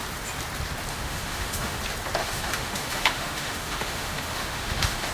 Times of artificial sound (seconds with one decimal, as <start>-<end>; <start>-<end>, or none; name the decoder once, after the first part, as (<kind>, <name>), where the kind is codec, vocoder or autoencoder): 0.9-1.8 (autoencoder, DAC-VAE); 2.2-5.1